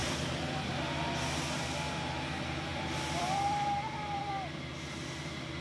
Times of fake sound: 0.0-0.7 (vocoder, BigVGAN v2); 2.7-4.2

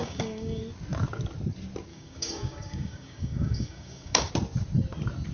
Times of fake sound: 0.0-0.6 (codec, DAC); 1.9-4.3